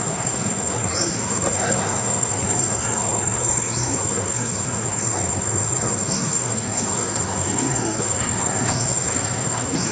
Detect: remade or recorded remade